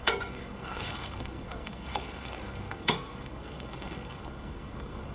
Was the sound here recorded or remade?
remade